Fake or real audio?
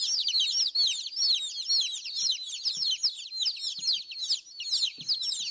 real